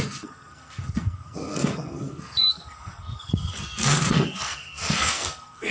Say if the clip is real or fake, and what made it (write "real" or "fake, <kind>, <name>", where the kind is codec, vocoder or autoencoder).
fake, codec, SNAC